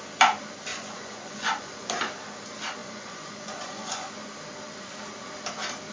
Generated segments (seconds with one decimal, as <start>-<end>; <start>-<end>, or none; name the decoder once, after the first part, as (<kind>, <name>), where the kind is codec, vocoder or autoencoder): 0.7-2.0 (vocoder, Vocos); 2.8-4.1